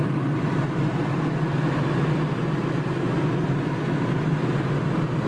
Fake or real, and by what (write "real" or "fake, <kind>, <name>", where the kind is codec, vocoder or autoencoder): real